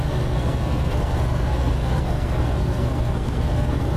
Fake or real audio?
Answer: fake